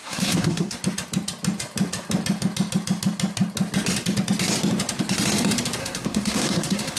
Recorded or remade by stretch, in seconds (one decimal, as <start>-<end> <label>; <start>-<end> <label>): 0.0-0.8 remade; 0.8-5.8 recorded; 5.8-7.0 remade